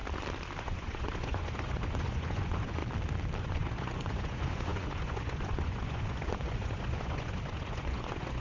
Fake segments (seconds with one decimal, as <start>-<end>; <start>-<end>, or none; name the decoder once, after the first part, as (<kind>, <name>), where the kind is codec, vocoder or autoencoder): 0.6-2.8 (vocoder, Vocos); 3.4-8.4